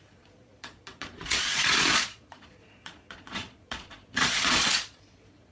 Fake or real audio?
fake